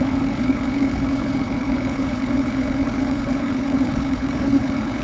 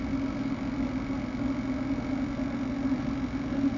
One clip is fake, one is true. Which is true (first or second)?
second